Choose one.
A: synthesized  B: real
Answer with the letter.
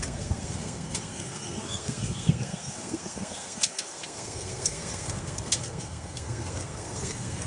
A